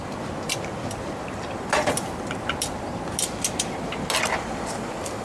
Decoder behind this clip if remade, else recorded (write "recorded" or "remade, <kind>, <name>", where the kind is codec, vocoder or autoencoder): recorded